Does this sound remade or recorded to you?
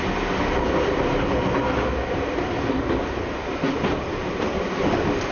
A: recorded